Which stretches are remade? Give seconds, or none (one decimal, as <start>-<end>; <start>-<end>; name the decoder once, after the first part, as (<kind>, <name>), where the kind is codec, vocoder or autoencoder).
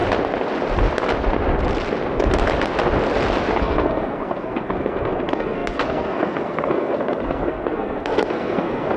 3.6-9.0 (codec, SNAC)